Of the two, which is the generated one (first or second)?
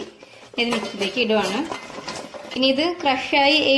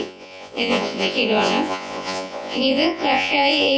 second